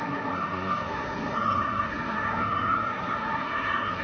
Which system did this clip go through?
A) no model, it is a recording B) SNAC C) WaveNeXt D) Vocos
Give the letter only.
B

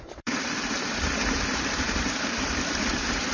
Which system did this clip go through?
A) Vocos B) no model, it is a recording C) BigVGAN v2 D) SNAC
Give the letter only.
C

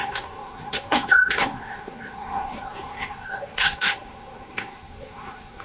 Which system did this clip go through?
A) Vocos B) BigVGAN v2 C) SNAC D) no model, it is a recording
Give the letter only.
C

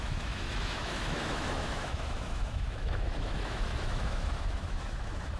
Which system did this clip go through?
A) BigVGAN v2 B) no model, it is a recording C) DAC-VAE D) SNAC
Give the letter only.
C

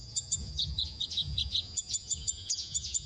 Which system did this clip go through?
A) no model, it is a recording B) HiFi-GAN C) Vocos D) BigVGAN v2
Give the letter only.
C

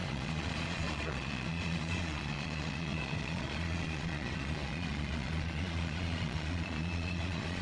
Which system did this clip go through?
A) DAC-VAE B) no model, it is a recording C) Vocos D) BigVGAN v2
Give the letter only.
C